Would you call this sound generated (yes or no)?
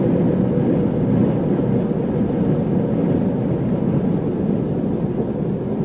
no